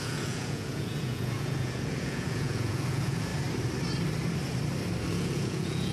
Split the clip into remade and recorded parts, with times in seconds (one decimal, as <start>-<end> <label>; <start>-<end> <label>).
0.0-3.3 remade; 3.3-5.1 recorded; 5.1-5.9 remade